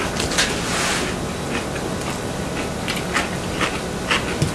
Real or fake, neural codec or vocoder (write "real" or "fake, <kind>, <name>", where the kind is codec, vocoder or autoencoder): real